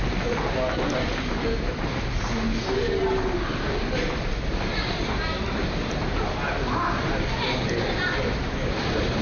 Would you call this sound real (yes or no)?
yes